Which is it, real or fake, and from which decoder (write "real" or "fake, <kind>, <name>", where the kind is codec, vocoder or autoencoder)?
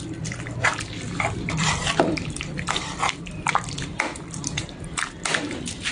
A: fake, vocoder, BigVGAN v2